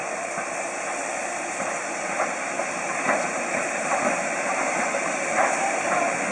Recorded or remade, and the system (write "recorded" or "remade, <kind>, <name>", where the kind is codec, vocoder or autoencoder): remade, vocoder, BigVGAN v2